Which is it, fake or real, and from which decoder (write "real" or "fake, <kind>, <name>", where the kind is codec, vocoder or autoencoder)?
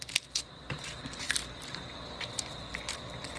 real